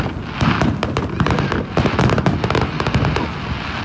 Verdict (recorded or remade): recorded